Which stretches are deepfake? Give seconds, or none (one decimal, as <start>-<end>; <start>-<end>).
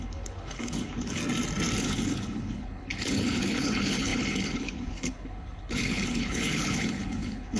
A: 0.0-1.2; 1.8-7.6